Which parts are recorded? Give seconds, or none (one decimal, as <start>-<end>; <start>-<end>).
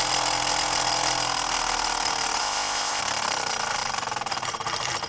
0.0-2.4; 3.0-5.1